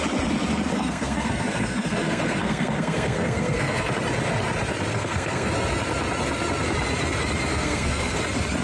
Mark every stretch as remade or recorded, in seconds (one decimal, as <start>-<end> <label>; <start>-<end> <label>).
0.0-0.7 recorded; 0.7-3.9 remade; 3.9-4.9 recorded; 4.9-5.5 remade; 5.5-7.5 recorded; 7.5-8.2 remade; 8.2-8.6 recorded